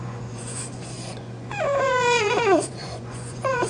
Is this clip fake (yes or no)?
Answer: yes